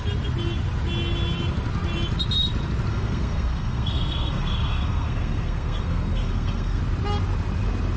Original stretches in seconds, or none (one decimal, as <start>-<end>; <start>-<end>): 0.0-2.9; 6.8-8.0